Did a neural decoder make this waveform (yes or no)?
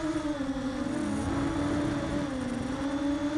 no